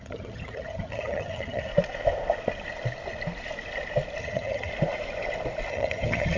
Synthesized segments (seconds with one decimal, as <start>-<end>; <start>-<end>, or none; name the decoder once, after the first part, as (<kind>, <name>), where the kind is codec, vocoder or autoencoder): 0.0-1.7 (vocoder, HiFi-GAN); 4.2-4.7; 5.7-6.4